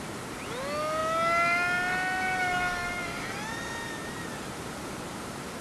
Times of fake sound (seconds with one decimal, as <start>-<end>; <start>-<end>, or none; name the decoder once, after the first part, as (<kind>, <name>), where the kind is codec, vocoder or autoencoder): none